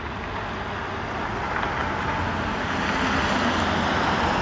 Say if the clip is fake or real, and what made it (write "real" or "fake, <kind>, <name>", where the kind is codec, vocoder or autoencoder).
real